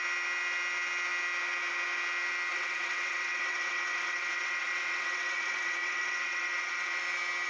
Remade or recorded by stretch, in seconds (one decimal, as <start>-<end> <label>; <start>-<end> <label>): 0.0-2.5 recorded; 2.5-7.0 remade; 7.0-7.5 recorded

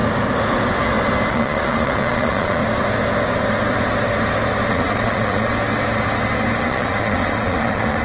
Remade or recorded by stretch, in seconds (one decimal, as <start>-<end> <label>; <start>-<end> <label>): 0.0-1.3 recorded; 1.3-2.6 remade; 2.6-4.7 recorded; 4.7-5.5 remade; 5.5-6.6 recorded; 6.6-8.0 remade

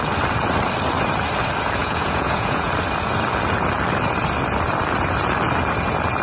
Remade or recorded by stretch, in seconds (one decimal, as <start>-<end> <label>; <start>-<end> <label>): 0.0-1.8 recorded; 1.8-2.7 remade; 2.7-6.2 recorded

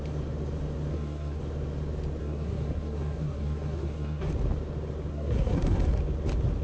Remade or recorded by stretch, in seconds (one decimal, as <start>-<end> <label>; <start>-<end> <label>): 0.0-0.9 recorded; 0.9-1.4 remade; 1.4-2.2 recorded; 2.2-4.3 remade; 4.3-5.1 recorded; 5.1-6.0 remade; 6.0-6.6 recorded